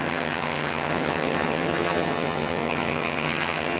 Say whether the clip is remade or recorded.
remade